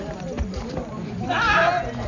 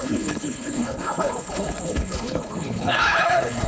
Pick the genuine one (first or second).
first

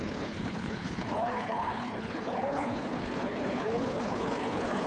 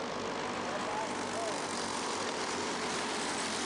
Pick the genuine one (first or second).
second